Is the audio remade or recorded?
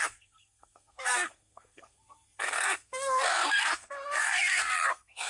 remade